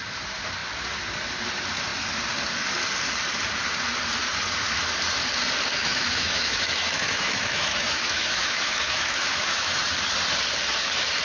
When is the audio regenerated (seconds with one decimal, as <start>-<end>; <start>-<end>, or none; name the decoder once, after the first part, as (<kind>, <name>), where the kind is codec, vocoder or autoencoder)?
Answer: 5.8-9.8 (autoencoder, DAC-VAE)